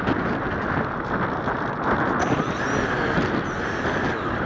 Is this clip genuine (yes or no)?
yes